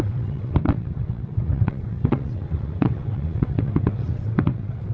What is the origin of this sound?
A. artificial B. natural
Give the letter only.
A